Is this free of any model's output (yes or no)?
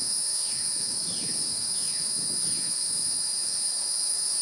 no